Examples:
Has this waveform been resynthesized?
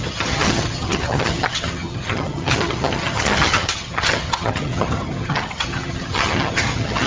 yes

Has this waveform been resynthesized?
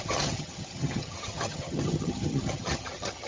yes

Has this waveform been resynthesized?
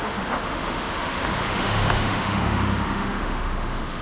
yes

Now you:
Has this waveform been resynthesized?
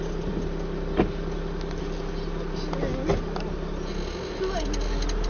no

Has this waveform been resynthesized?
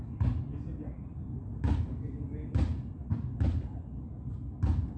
no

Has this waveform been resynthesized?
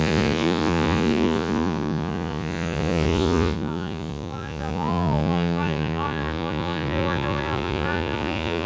yes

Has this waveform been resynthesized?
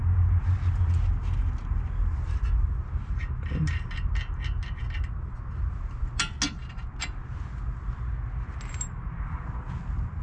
no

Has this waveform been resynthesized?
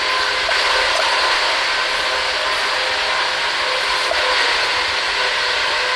no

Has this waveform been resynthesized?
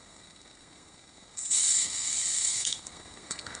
yes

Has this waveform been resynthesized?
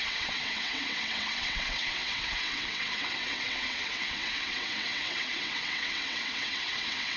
yes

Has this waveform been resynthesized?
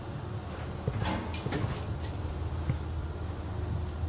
no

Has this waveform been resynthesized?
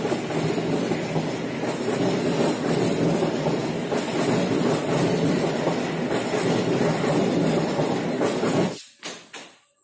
no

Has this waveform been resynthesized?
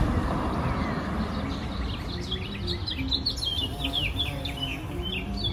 no